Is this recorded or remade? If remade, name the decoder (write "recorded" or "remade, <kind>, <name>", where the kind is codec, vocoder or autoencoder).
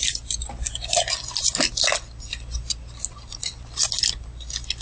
recorded